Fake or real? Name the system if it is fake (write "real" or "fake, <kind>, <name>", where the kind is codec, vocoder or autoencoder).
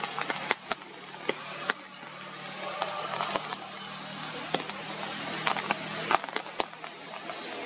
real